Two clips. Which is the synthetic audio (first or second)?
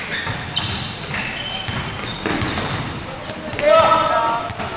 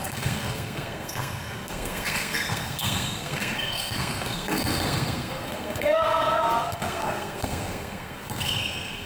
second